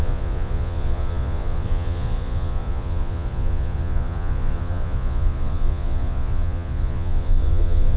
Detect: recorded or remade remade